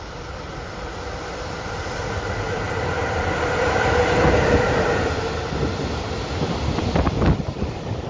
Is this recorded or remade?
remade